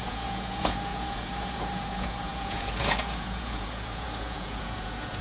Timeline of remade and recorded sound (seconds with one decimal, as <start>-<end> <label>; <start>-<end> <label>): 0.0-5.2 remade